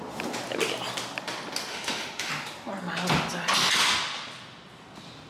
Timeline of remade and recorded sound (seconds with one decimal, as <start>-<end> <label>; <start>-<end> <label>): 0.0-1.7 recorded; 1.7-2.3 remade; 2.3-5.3 recorded